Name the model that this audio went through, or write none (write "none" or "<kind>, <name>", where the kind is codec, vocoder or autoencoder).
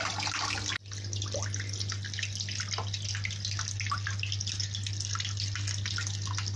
none